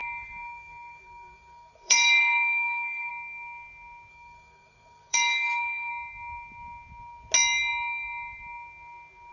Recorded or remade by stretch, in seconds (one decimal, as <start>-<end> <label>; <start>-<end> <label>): 0.0-3.1 remade; 3.1-4.1 recorded; 4.1-5.9 remade; 5.9-9.3 recorded